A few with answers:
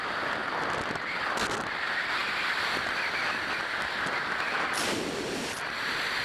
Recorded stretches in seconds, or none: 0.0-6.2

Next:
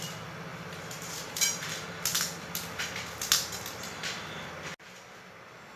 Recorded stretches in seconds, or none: 0.0-0.5; 1.7-5.8

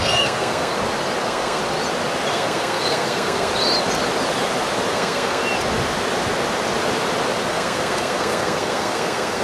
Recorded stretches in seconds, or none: 0.7-1.2; 1.6-2.3; 3.5-4.9; 5.4-7.5

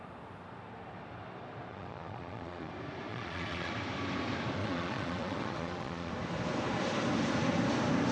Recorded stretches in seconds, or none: 0.0-1.7; 2.7-3.1; 3.7-4.6; 6.1-8.1